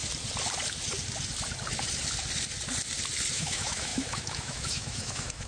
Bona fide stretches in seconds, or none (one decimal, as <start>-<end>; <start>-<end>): 0.0-3.3